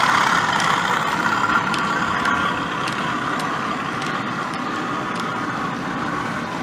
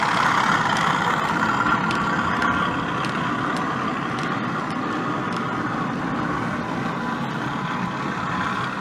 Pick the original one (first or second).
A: second